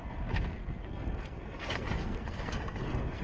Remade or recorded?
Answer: remade